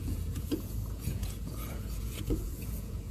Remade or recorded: remade